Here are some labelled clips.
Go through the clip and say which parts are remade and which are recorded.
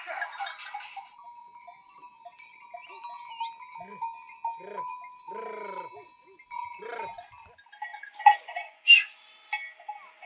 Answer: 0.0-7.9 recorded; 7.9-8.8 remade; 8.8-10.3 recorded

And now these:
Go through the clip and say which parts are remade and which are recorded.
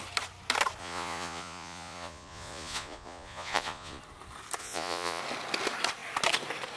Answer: 0.0-0.8 recorded; 0.8-4.0 remade; 4.0-4.6 recorded; 4.6-5.2 remade; 5.2-6.8 recorded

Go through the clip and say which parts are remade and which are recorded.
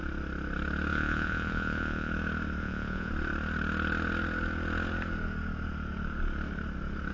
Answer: 0.0-0.9 recorded; 0.9-2.1 remade; 2.1-2.6 recorded; 2.6-3.1 remade; 3.1-7.1 recorded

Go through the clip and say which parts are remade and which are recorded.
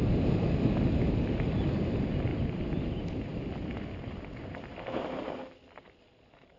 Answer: 0.0-6.6 recorded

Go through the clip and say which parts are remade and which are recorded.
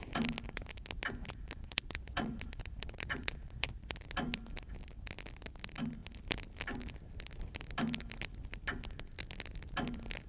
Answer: 0.0-1.2 recorded; 1.2-3.9 remade; 3.9-10.3 recorded